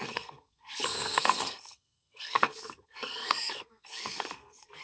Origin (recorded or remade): remade